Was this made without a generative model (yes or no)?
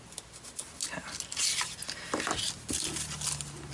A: yes